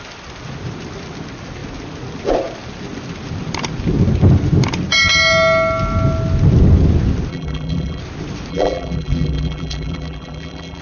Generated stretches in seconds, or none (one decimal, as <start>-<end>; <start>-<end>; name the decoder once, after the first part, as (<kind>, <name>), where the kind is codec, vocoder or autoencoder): 7.3-8.0 (vocoder, BigVGAN v2); 8.5-10.8